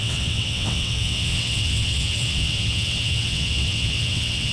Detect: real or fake fake